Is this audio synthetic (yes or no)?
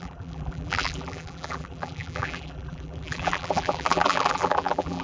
yes